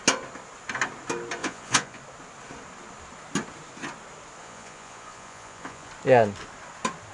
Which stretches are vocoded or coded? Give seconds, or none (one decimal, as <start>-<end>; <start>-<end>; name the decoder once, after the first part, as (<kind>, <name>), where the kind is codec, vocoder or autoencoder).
1.4-2.0 (vocoder, Vocos); 4.4-5.9

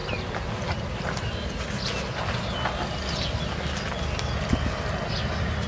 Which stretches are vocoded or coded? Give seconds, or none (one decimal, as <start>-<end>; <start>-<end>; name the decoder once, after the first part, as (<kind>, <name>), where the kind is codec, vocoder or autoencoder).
none

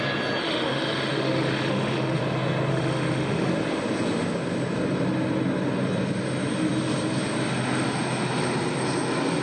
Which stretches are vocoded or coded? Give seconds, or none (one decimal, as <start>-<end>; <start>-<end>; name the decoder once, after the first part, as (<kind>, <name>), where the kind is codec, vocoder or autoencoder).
0.4-2.2 (autoencoder, DAC-VAE); 2.7-3.5

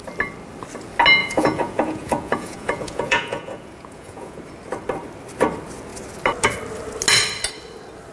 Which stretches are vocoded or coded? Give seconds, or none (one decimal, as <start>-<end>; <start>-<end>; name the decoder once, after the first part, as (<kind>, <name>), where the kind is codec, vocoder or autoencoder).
1.2-4.4 (vocoder, Vocos)

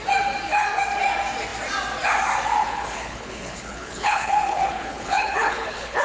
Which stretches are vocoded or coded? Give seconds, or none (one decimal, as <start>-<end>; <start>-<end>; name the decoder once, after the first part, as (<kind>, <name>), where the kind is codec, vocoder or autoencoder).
2.6-6.0 (codec, HILCodec)

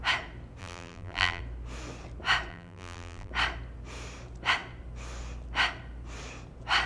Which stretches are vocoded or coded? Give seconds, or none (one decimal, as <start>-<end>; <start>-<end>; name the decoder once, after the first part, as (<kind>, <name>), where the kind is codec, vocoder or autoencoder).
0.6-1.4 (vocoder, BigVGAN v2); 2.5-3.3

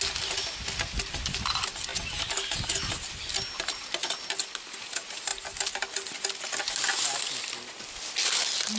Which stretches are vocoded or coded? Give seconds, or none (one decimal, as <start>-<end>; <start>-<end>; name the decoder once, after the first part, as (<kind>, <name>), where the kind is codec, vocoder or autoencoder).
none

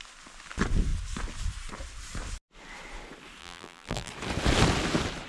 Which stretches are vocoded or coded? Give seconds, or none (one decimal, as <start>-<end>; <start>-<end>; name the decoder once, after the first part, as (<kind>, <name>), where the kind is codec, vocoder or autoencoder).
3.4-4.1 (vocoder, BigVGAN v2)